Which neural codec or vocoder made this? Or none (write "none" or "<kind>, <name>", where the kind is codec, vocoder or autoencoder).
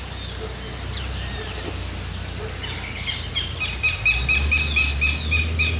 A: none